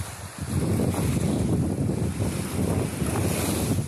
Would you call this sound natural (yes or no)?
yes